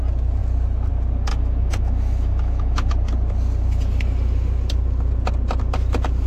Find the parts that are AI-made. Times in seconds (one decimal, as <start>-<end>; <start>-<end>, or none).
1.3-2.9